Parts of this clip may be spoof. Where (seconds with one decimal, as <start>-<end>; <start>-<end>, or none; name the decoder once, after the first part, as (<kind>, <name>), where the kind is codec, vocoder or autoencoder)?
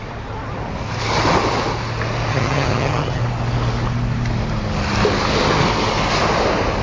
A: 2.3-3.2 (vocoder, HiFi-GAN)